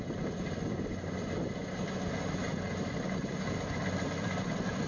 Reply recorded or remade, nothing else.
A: recorded